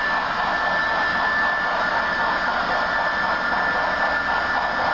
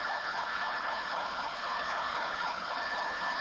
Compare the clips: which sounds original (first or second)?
first